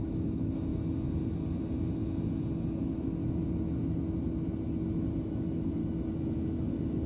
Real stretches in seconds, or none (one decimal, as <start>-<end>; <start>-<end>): 0.7-2.8; 3.2-5.2; 5.8-7.1